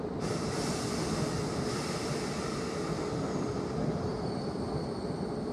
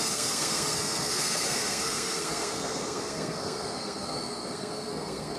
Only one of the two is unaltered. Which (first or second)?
first